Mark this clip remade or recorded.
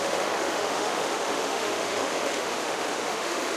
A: remade